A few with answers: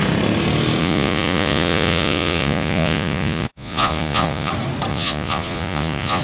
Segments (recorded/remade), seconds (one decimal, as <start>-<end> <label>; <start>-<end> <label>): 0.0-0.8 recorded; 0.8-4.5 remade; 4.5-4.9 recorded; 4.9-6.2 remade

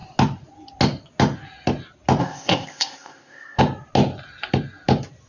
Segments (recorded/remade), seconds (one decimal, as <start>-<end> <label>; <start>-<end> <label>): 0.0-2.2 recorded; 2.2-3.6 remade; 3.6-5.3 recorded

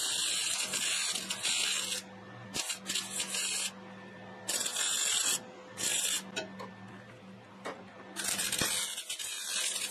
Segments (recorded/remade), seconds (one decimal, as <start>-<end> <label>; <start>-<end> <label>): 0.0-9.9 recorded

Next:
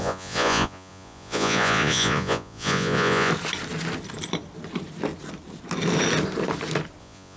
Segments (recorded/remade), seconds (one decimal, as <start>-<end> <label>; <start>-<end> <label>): 0.0-3.3 remade; 3.3-7.0 recorded; 7.0-7.4 remade

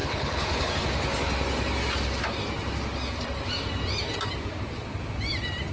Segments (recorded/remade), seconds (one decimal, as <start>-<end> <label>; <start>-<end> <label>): 0.0-0.7 remade; 0.7-5.7 recorded

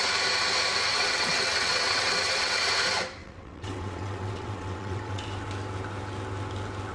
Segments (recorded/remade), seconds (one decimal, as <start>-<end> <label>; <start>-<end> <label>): 0.0-0.9 recorded; 0.9-2.5 remade; 2.5-3.2 recorded; 3.2-5.2 remade; 5.2-6.9 recorded

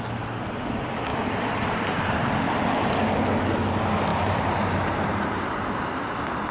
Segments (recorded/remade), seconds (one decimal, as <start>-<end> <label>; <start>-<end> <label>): 0.0-1.1 recorded; 1.1-2.3 remade; 2.3-4.1 recorded; 4.1-6.0 remade; 6.0-6.5 recorded